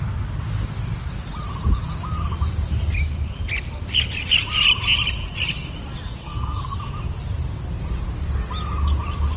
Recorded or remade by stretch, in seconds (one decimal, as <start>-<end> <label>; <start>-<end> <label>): 0.0-6.2 recorded; 6.2-6.8 remade; 6.8-9.4 recorded